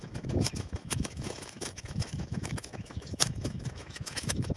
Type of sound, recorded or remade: remade